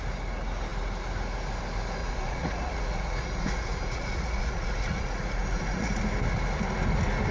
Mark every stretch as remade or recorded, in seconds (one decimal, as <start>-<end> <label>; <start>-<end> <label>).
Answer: 0.0-2.0 recorded; 2.0-6.0 remade; 6.0-7.3 recorded